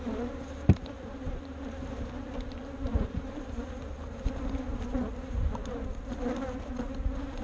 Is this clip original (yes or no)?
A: no